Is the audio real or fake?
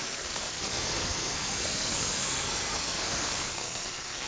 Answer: fake